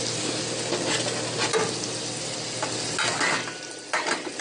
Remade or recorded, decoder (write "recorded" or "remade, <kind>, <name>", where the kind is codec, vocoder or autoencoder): recorded